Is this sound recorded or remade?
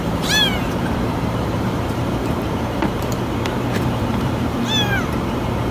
remade